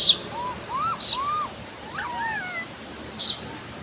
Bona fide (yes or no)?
yes